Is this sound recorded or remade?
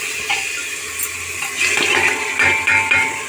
recorded